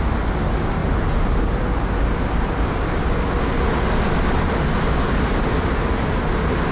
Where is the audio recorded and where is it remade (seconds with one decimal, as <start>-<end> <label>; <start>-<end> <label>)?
0.0-6.7 recorded